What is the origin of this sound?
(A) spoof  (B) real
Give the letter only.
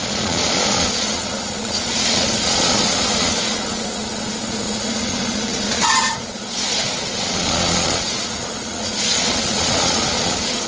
A